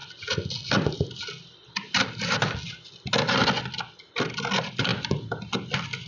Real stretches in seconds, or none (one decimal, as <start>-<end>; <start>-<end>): 0.0-6.1